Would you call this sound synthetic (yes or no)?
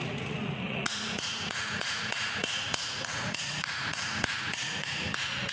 yes